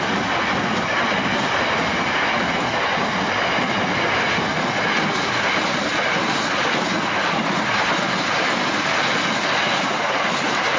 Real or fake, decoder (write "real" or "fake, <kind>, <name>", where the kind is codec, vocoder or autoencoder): real